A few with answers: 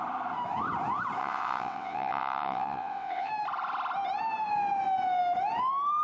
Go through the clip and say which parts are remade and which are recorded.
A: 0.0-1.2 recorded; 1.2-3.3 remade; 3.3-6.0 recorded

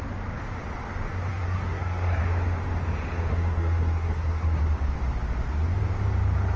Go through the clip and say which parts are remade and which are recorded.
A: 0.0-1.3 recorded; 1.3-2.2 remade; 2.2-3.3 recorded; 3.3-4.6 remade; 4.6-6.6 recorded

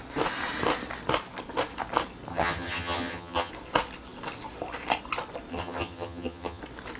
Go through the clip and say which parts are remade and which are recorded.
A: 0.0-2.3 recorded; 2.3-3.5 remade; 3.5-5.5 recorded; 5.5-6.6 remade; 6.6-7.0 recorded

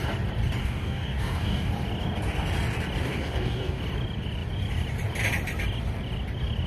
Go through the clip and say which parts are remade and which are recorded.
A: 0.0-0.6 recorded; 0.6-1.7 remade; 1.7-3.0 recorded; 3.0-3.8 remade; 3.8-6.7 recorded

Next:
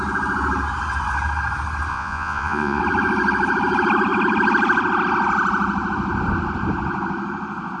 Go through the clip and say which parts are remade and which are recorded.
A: 0.0-1.9 recorded; 1.9-2.8 remade; 2.8-7.8 recorded